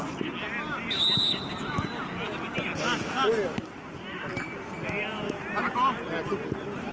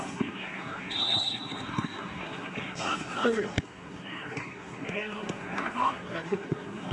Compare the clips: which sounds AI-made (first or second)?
second